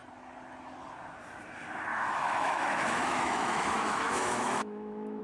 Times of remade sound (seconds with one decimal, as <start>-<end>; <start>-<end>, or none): 1.9-5.2